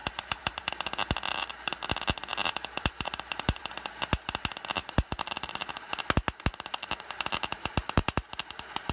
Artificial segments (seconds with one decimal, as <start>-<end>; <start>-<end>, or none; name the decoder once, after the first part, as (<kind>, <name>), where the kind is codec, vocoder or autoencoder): 0.0-0.7 (vocoder, BigVGAN v2); 2.3-3.9; 4.8-5.7